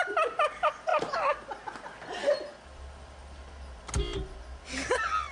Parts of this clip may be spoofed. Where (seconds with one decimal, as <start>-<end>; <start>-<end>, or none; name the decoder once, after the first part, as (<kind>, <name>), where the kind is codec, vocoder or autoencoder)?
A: none